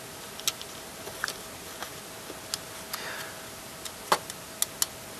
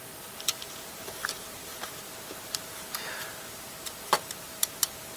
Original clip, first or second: first